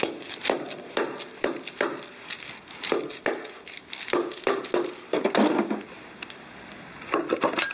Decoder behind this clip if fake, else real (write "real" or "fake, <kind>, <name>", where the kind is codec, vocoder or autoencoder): real